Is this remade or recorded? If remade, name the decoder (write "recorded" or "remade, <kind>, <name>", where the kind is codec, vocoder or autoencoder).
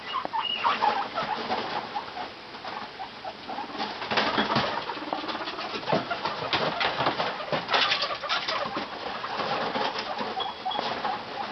recorded